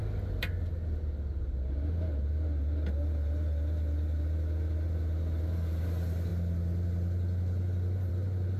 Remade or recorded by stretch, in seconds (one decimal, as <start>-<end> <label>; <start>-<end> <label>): 0.0-8.6 recorded